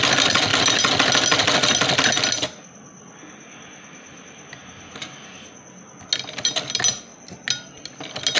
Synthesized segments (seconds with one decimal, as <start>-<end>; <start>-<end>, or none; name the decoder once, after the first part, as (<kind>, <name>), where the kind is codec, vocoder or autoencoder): none